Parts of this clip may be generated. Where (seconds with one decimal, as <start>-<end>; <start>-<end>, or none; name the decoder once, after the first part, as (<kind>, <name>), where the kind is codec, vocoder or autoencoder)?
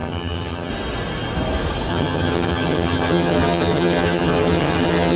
0.0-0.7 (vocoder, HiFi-GAN); 1.9-5.2